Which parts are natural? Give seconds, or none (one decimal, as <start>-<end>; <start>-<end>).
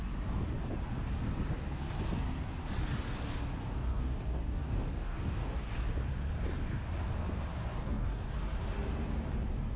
0.0-3.9; 5.7-7.8; 8.3-9.8